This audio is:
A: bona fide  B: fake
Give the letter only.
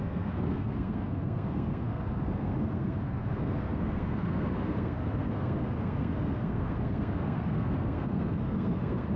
B